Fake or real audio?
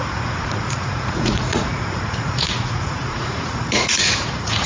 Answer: fake